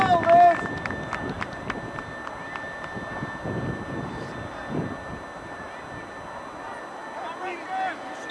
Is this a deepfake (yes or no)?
no